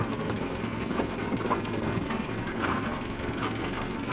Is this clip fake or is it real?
fake